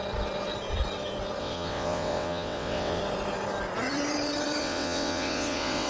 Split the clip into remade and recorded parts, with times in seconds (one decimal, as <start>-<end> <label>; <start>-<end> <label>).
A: 0.0-1.4 recorded; 1.4-3.0 remade; 3.0-4.6 recorded; 4.6-5.9 remade